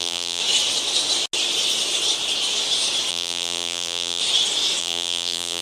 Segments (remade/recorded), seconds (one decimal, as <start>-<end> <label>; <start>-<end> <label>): 0.0-0.4 remade; 0.4-3.1 recorded; 3.1-4.2 remade; 4.2-4.8 recorded; 4.8-5.6 remade